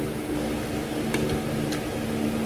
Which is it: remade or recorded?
recorded